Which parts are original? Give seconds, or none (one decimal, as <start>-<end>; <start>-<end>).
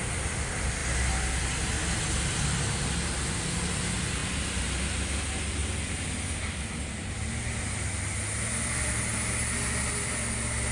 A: 0.0-10.7